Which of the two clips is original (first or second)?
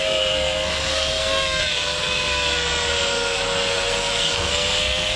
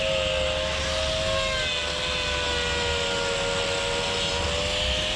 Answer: second